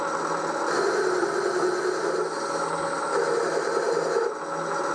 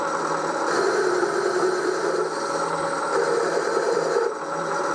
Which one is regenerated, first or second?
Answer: second